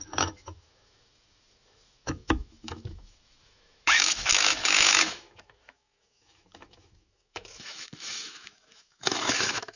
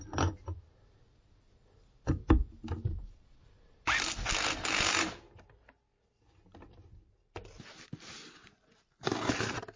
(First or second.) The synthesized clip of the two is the first